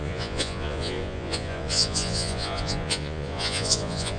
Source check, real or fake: fake